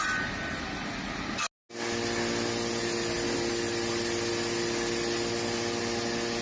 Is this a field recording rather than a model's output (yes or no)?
yes